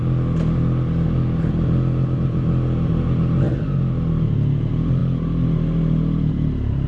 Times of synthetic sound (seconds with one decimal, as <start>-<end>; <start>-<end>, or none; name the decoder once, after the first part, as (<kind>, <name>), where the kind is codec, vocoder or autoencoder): none